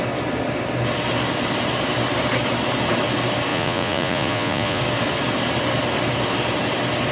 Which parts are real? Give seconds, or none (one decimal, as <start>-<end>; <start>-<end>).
0.0-3.5; 4.8-7.1